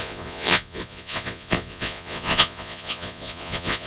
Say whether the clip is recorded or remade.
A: remade